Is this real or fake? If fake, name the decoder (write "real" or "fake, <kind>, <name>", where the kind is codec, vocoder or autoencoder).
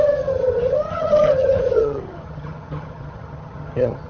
fake, vocoder, HiFi-GAN